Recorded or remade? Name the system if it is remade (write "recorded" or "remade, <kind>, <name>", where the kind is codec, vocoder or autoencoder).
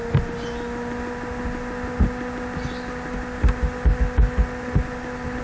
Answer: recorded